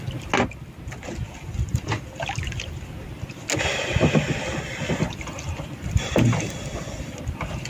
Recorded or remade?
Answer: recorded